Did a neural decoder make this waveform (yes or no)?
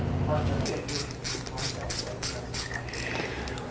no